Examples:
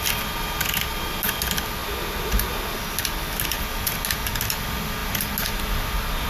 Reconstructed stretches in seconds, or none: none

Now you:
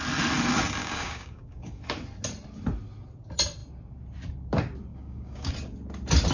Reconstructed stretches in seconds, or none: 0.8-1.8; 4.9-5.5

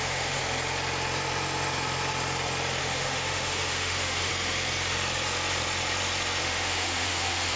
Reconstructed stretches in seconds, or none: 0.0-0.4; 2.8-4.3; 6.4-7.6

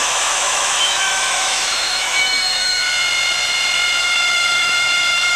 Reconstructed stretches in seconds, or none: 0.0-2.8; 4.0-5.4

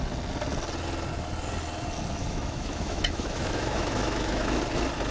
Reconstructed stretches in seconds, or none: 2.2-4.6

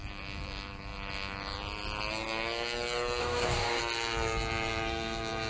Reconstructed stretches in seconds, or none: 3.2-3.8